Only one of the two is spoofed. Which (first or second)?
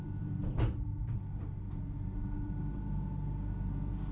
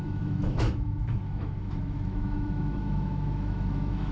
second